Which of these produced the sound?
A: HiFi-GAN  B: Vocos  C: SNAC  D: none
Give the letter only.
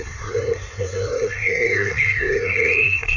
C